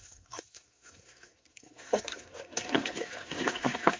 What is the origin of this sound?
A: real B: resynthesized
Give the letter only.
B